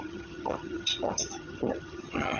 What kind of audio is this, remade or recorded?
remade